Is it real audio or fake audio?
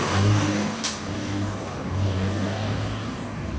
fake